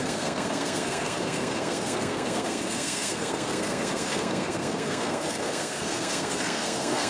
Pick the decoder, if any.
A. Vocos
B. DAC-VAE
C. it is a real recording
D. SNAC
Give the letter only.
D